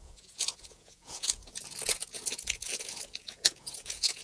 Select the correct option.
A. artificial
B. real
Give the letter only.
A